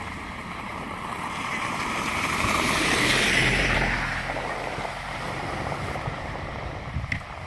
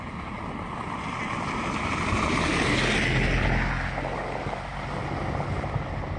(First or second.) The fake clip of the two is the first